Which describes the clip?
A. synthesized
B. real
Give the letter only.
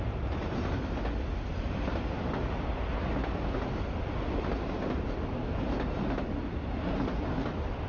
B